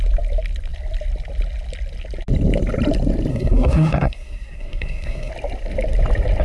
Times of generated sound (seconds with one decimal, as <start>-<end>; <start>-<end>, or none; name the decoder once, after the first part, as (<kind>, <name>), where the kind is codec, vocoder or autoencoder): 3.3-5.3 (codec, SNAC)